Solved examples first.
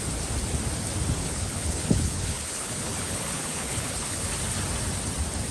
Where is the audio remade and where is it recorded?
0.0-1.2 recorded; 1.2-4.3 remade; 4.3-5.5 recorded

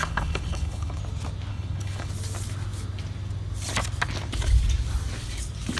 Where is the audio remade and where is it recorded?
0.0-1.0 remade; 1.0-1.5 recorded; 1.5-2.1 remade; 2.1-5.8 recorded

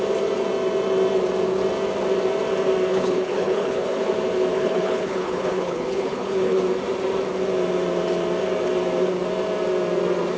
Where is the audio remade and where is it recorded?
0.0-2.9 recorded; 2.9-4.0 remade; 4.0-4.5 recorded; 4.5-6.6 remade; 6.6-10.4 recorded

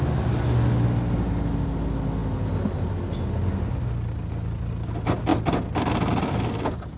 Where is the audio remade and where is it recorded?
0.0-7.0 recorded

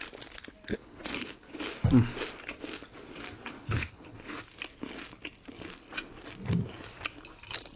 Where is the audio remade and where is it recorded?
0.0-0.7 recorded; 0.7-1.6 remade; 1.6-3.5 recorded; 3.5-4.4 remade; 4.4-7.8 recorded